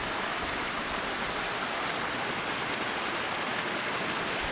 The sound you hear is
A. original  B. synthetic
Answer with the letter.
A